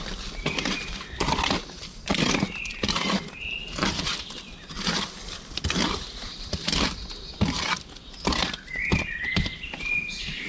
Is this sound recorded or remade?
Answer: remade